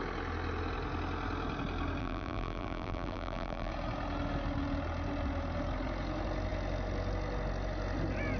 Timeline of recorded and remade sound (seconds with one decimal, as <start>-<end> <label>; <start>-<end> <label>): 0.0-2.0 recorded; 2.0-3.7 remade; 3.7-8.4 recorded